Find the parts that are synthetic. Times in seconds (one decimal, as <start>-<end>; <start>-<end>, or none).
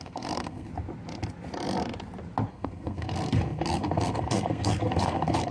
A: 0.0-0.7; 2.5-5.5